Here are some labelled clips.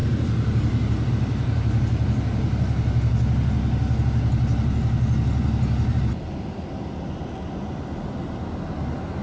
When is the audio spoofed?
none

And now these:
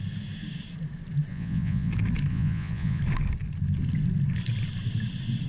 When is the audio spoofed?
1.3-1.9 (vocoder, Vocos); 2.3-3.0

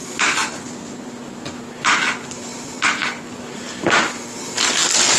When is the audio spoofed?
none

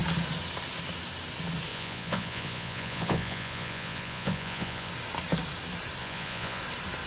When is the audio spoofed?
1.7-4.9 (vocoder, Vocos); 6.0-6.6

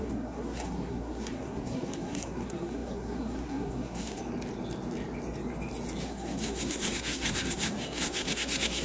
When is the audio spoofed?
0.0-4.2 (codec, SNAC); 6.0-8.8

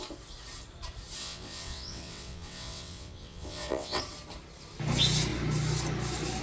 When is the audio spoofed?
1.2-4.0 (vocoder, WaveNeXt)